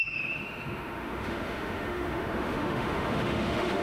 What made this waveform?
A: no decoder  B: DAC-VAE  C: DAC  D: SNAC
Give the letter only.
B